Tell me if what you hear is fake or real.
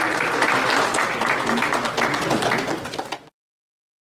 real